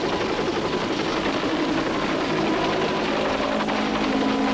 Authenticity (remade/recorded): recorded